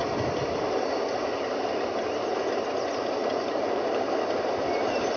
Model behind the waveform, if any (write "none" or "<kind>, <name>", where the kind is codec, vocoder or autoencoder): none